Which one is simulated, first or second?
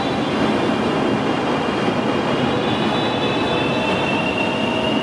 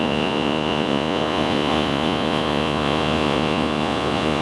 second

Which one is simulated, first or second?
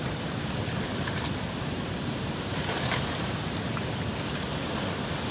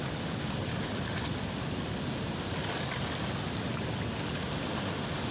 first